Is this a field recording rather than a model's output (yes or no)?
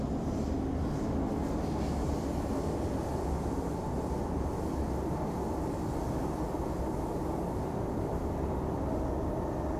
yes